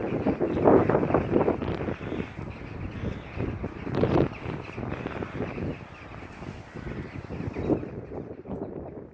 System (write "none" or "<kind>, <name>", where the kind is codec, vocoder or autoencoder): none